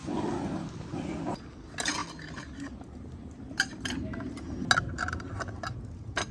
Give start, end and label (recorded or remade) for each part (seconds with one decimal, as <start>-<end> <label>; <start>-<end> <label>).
0.0-0.6 remade; 0.6-6.3 recorded